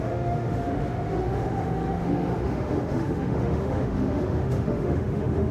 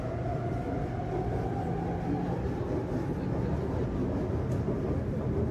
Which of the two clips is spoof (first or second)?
first